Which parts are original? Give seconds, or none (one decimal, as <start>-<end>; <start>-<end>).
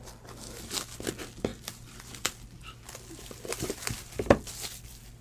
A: 0.0-5.2